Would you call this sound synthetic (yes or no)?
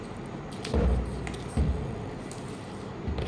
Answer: no